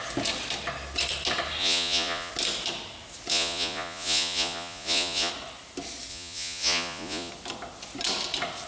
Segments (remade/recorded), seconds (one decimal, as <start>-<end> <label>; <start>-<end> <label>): 0.0-1.6 recorded; 1.6-2.3 remade; 2.3-3.3 recorded; 3.3-5.3 remade; 5.3-6.1 recorded; 6.1-7.3 remade; 7.3-8.7 recorded